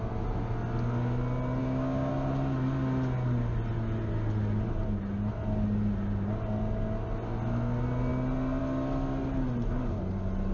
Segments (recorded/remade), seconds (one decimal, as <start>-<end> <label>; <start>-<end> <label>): 0.0-1.6 recorded; 1.6-2.1 remade; 2.1-10.5 recorded